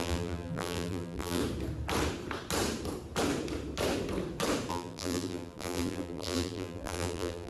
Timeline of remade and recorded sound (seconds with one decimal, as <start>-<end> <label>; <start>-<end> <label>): 0.0-1.4 remade; 1.4-4.7 recorded; 4.7-7.5 remade